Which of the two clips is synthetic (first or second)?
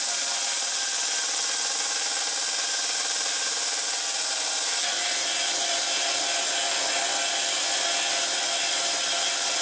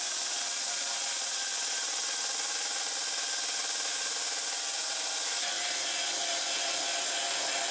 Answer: second